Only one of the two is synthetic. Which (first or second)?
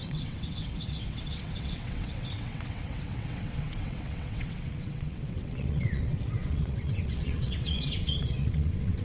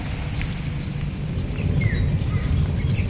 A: first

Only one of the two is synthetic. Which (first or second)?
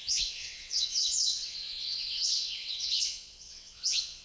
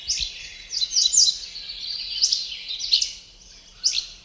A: first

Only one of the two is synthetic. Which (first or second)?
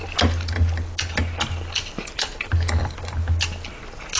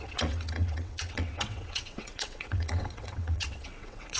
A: second